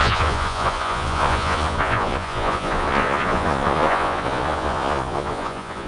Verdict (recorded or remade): remade